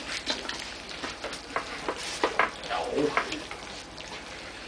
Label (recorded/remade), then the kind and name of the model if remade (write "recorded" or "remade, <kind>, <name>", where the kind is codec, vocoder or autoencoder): recorded